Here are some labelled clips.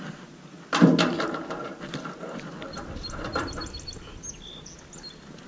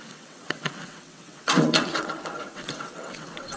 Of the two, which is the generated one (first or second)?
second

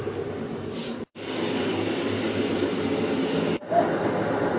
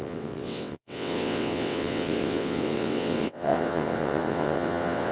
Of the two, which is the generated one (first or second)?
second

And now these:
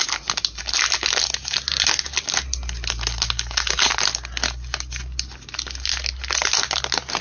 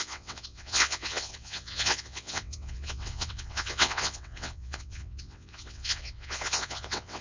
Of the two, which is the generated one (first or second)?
second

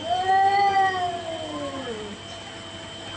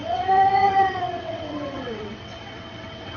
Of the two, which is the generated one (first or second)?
second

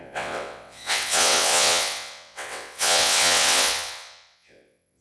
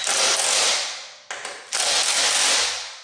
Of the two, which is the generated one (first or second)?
first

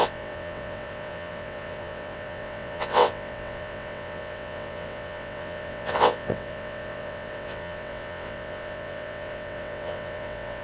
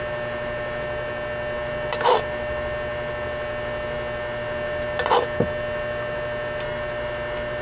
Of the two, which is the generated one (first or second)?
first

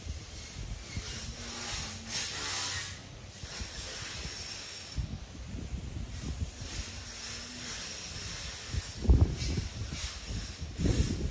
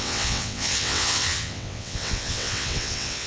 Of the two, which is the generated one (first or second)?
second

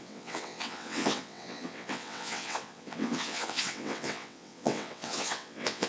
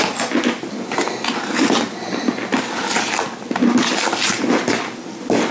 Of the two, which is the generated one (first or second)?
first